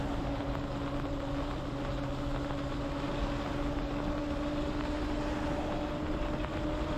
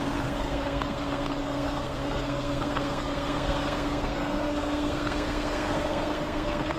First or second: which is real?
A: first